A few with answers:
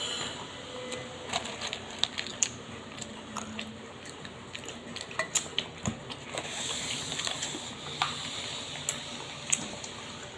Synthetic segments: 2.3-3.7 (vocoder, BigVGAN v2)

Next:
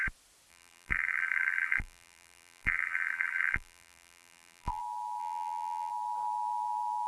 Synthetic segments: 0.5-4.8 (vocoder, BigVGAN v2); 5.2-5.9

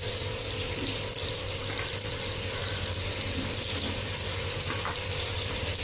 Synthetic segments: 0.0-5.8 (vocoder, BigVGAN v2)